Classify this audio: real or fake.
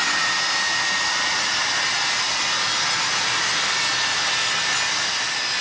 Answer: real